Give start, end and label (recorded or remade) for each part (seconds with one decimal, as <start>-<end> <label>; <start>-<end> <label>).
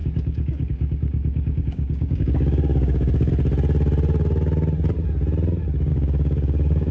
0.0-3.3 remade; 3.3-5.9 recorded; 5.9-6.9 remade